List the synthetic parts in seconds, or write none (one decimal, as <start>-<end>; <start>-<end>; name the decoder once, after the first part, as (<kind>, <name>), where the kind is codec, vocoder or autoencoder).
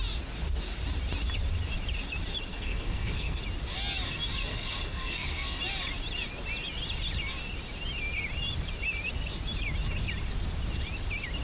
2.5-3.4 (codec, SNAC); 4.5-5.6